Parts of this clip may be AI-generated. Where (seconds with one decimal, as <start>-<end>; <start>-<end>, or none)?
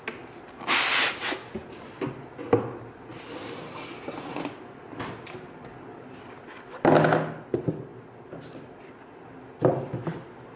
none